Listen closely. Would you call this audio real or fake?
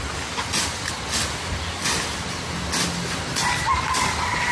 real